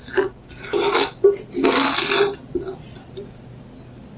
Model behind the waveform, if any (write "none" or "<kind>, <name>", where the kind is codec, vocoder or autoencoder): none